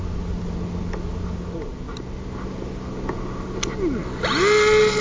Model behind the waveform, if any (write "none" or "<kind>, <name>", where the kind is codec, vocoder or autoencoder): none